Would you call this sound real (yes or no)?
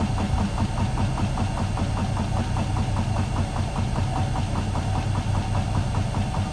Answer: yes